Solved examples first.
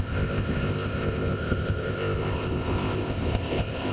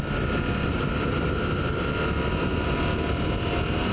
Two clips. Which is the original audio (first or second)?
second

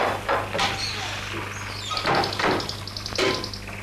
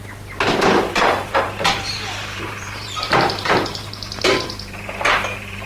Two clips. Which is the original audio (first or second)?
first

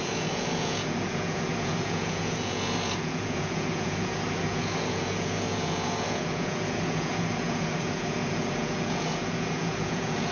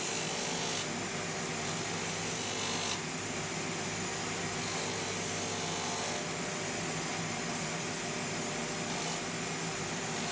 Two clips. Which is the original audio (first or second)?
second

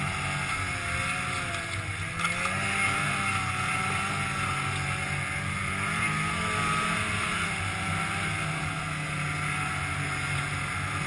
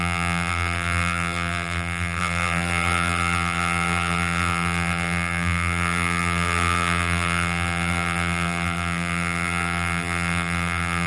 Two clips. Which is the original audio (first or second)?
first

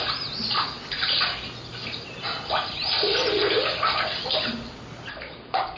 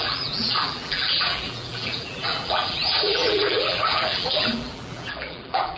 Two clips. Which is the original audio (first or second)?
first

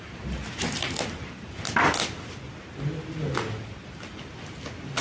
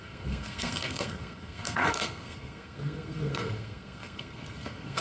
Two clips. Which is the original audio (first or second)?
first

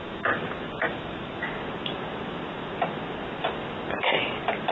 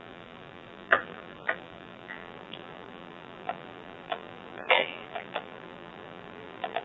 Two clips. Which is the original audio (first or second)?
first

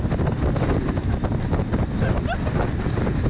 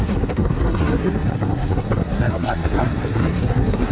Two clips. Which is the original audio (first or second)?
first